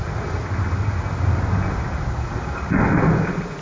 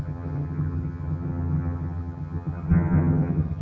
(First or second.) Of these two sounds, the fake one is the second